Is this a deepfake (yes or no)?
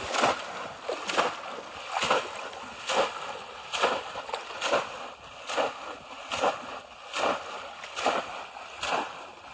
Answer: no